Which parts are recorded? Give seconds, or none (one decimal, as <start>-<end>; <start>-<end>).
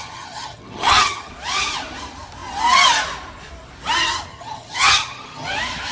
1.3-4.3; 5.5-5.9